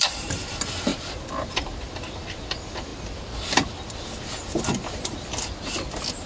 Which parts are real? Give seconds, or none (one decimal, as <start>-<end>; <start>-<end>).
none

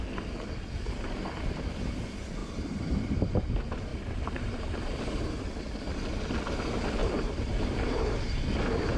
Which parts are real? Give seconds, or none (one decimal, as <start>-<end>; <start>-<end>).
0.0-2.4; 3.3-3.9; 5.0-7.0; 8.4-9.0

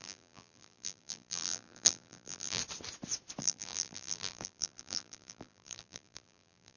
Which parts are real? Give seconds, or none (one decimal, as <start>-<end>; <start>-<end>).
2.6-3.4

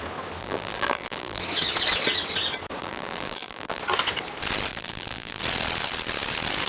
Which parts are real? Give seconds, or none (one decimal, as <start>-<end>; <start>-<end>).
0.0-0.4; 1.4-2.8; 3.8-4.7; 5.4-6.7

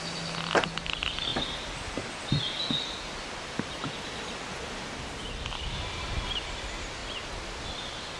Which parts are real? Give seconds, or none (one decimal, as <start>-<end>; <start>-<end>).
0.0-8.2